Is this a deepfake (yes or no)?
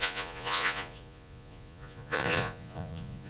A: yes